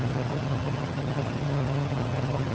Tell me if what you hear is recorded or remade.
remade